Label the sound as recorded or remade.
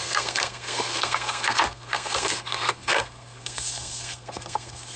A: remade